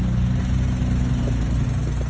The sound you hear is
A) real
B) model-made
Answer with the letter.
A